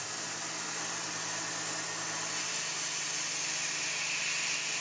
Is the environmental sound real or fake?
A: real